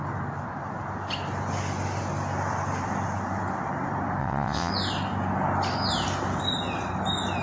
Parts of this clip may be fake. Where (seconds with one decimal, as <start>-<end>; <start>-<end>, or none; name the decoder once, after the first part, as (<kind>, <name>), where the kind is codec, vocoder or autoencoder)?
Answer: 4.2-4.7 (vocoder, WaveNeXt)